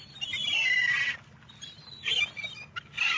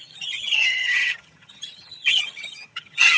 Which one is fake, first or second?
second